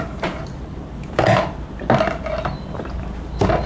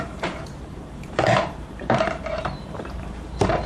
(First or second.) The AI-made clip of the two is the second